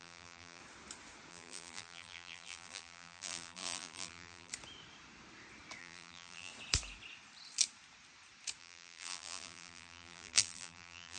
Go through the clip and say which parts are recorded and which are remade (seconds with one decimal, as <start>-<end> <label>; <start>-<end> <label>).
0.0-0.6 remade; 0.6-1.3 recorded; 1.3-4.5 remade; 4.5-5.8 recorded; 5.8-6.5 remade; 6.5-8.6 recorded; 8.6-11.2 remade

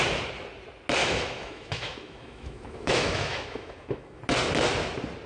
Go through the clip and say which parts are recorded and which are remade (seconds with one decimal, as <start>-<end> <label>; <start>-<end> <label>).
0.0-1.0 recorded; 1.0-4.2 remade; 4.2-5.3 recorded

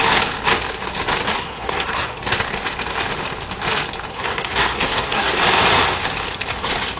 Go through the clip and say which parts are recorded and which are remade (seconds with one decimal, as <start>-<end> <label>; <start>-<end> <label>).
0.0-1.3 recorded; 1.3-2.2 remade; 2.2-4.1 recorded; 4.1-5.3 remade; 5.3-7.0 recorded